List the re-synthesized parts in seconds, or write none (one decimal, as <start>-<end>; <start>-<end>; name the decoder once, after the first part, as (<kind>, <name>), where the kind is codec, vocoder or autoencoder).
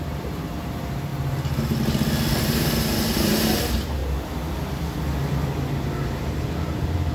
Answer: 0.0-1.1 (vocoder, BigVGAN v2); 2.4-4.0; 6.2-7.1